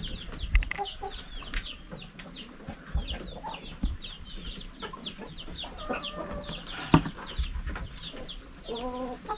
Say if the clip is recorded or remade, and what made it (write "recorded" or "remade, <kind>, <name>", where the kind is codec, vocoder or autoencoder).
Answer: recorded